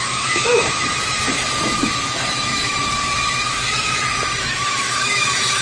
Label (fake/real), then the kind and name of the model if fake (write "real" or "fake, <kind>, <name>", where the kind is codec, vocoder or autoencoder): fake, autoencoder, DAC-VAE